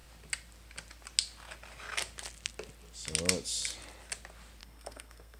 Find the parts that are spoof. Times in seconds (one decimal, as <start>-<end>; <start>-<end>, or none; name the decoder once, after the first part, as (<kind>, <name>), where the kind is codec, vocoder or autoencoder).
4.6-5.4 (codec, SNAC)